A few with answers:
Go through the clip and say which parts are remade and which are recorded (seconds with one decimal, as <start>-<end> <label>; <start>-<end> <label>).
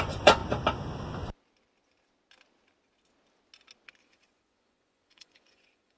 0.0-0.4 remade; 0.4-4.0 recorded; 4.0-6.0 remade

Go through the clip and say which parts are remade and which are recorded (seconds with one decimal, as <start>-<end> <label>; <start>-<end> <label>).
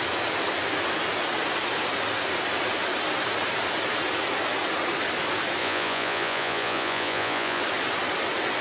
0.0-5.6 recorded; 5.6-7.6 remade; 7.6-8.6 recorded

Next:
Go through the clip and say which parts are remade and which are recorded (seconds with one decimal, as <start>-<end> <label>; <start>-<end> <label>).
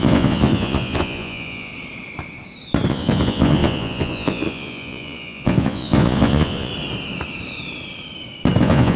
0.0-1.7 remade; 1.7-2.9 recorded; 2.9-6.7 remade; 6.7-8.6 recorded; 8.6-9.0 remade